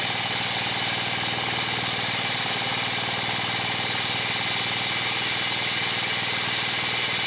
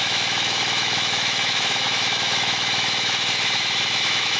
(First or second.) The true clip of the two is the first